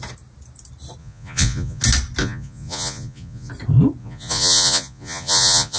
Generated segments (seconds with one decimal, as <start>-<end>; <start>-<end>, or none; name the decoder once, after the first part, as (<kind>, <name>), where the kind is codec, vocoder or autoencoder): 1.0-1.8 (vocoder, Vocos); 2.2-3.5; 4.0-5.8